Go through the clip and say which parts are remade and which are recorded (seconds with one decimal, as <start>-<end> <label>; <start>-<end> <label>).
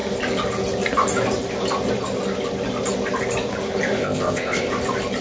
0.0-4.0 recorded; 4.0-4.7 remade; 4.7-5.2 recorded